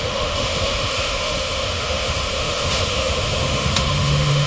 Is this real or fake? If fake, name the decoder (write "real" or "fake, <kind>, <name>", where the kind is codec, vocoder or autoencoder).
fake, autoencoder, DAC-VAE